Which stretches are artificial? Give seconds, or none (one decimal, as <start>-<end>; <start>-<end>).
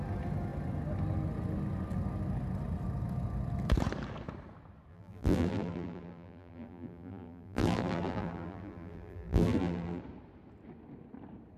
4.9-10.0